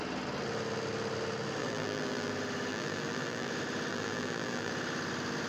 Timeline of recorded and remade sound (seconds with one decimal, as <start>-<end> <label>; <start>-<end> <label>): 0.0-1.6 recorded; 1.6-2.3 remade; 2.3-2.7 recorded; 2.7-3.5 remade; 3.5-3.9 recorded; 3.9-4.7 remade; 4.7-5.5 recorded